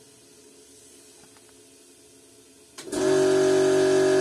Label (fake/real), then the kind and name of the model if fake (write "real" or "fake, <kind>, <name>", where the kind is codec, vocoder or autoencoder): real